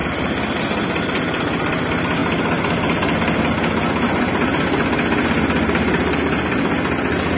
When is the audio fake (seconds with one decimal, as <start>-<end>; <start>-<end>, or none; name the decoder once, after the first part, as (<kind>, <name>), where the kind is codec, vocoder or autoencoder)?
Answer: none